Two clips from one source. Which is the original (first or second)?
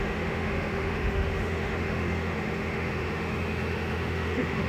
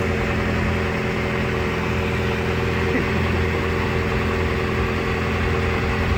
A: second